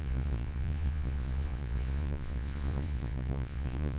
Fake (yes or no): yes